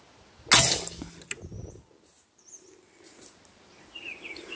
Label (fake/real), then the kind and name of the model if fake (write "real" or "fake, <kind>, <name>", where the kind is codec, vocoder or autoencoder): real